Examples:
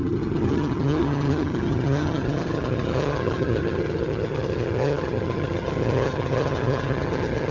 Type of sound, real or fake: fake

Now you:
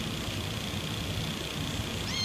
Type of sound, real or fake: real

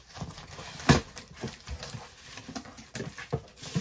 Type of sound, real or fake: real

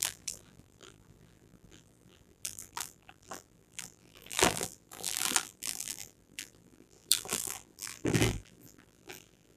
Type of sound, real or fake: fake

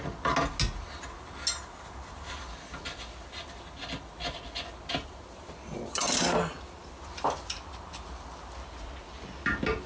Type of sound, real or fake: real